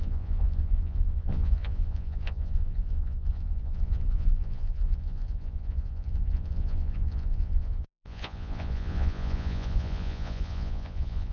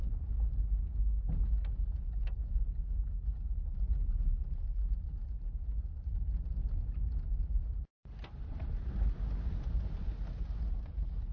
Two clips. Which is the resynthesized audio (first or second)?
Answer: first